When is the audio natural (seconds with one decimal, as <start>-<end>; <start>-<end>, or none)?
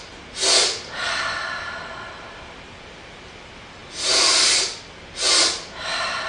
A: 0.0-6.3